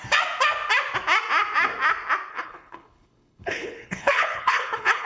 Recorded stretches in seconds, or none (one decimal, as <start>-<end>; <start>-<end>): 0.0-2.3